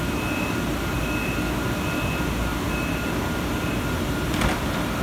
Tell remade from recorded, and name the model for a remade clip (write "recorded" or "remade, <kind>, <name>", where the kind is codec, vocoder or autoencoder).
recorded